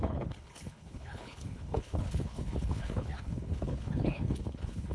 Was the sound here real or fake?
fake